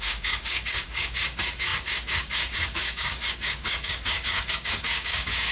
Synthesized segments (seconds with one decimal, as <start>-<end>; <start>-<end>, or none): 0.0-5.5